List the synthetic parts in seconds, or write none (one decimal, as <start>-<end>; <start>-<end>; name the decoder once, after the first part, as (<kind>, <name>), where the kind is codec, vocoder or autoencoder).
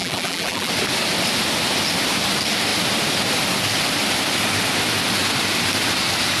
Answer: 0.0-0.7 (vocoder, BigVGAN v2)